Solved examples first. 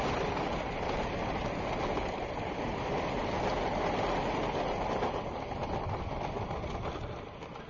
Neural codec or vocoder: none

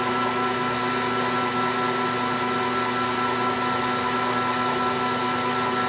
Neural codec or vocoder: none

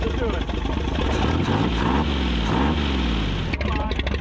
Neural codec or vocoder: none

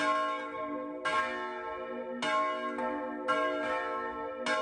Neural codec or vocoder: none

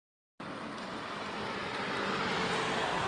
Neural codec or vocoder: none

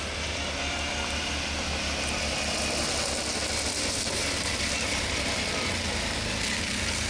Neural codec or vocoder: none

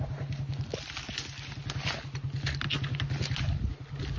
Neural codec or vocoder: none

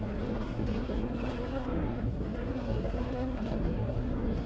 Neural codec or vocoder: codec, SNAC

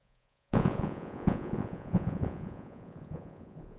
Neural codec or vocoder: vocoder, Vocos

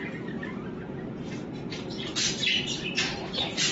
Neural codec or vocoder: vocoder, BigVGAN v2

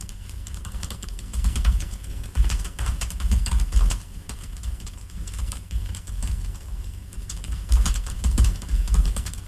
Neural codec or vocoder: codec, SNAC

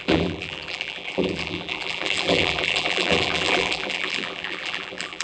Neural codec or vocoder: vocoder, BigVGAN v2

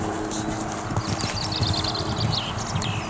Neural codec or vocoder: none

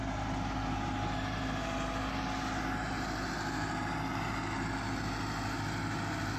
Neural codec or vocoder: none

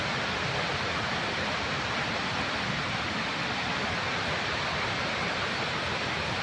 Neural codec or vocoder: vocoder, BigVGAN v2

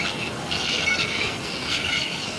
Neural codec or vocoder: codec, SNAC